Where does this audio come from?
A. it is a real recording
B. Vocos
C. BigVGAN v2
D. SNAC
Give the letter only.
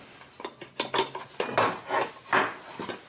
A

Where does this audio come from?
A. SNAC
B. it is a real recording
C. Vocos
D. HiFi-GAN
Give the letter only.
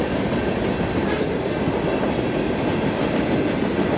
B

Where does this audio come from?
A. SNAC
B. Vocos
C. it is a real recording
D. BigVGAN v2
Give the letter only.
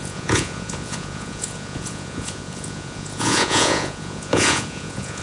B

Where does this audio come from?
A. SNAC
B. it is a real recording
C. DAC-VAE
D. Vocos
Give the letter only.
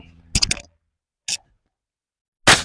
B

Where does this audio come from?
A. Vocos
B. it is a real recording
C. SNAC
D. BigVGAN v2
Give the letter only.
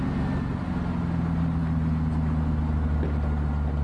B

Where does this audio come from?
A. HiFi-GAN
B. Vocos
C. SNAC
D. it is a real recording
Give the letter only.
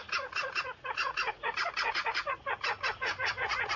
B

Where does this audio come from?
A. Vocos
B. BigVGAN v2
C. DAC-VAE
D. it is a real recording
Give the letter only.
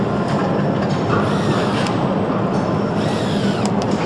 D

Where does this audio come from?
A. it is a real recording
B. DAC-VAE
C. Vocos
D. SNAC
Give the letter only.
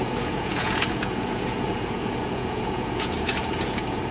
C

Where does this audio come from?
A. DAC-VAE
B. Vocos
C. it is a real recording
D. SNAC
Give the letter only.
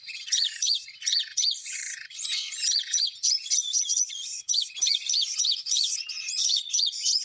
B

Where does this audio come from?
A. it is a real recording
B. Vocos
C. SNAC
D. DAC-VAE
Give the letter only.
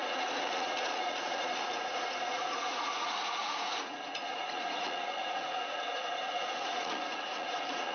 B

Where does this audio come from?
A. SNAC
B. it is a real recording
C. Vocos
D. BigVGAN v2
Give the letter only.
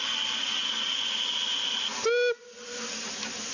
B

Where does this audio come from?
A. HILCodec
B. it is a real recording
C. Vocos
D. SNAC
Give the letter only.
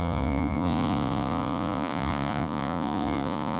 C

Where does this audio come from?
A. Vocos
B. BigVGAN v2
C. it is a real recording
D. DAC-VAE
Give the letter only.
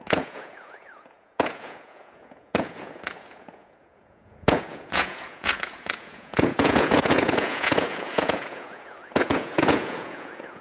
A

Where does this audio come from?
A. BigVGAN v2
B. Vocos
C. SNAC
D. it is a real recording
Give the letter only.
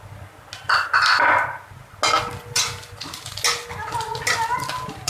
D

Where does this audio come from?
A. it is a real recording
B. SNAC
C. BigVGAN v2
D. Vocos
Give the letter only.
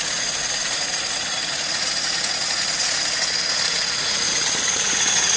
D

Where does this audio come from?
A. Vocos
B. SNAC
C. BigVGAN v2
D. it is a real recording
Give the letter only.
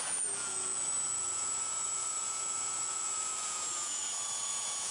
A